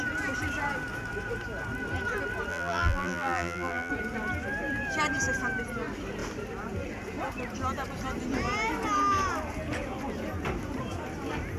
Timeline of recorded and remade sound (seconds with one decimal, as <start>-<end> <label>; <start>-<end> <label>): 0.0-2.5 recorded; 2.5-3.9 remade; 3.9-11.6 recorded